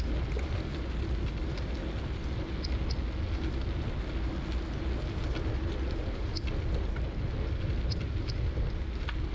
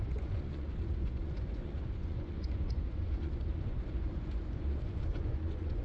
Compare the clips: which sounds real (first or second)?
first